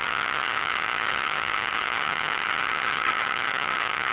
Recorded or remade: remade